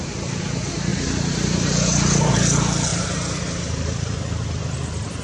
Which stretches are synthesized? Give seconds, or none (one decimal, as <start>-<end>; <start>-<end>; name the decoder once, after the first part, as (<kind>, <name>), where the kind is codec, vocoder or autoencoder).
0.9-2.3 (vocoder, BigVGAN v2); 2.9-4.2